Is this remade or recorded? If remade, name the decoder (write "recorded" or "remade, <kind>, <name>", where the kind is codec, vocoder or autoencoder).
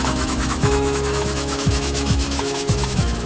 remade, autoencoder, DAC-VAE